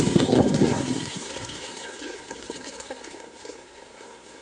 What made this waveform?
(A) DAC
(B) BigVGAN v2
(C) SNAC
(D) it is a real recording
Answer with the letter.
C